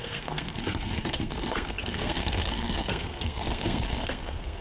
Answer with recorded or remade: remade